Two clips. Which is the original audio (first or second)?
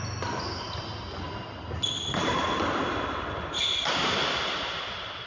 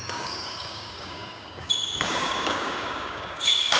first